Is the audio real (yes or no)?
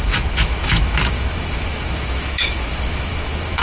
no